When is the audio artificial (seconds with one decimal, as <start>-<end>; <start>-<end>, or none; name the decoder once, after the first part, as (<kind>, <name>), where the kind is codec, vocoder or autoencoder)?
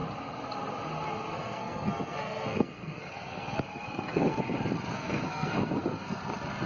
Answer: 1.3-4.4 (codec, SNAC); 4.9-6.2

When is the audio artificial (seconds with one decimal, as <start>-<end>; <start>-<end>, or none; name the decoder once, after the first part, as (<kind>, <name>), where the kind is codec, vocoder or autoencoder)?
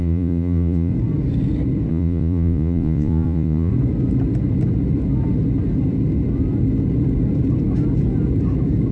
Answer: 0.0-0.9 (vocoder, Vocos); 1.9-3.7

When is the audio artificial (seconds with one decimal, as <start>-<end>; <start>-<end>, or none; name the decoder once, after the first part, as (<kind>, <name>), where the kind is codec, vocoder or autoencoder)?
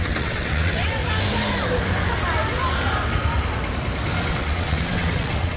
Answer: 0.0-1.0 (vocoder, WaveNeXt); 4.3-5.6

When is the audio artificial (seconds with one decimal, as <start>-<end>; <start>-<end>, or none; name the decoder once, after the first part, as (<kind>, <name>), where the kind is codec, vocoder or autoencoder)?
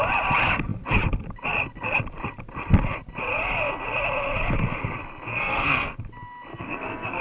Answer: 5.3-6.0 (codec, SNAC); 6.5-7.2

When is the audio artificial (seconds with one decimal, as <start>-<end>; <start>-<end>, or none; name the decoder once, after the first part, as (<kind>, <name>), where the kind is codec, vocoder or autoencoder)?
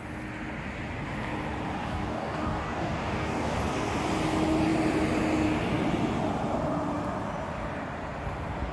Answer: 1.8-3.6 (codec, DAC)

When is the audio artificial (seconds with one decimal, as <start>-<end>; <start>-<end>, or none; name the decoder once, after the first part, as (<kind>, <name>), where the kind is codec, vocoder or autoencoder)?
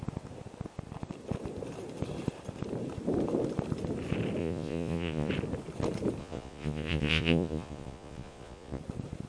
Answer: 4.4-5.3 (vocoder, Vocos); 6.2-8.8